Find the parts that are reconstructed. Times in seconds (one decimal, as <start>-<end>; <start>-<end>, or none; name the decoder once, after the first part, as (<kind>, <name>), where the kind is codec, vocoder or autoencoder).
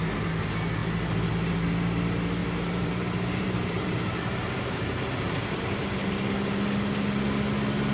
2.4-5.9 (vocoder, BigVGAN v2)